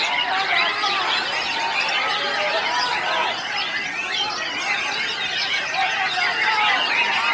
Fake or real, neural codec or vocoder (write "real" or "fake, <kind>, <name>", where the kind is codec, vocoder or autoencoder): real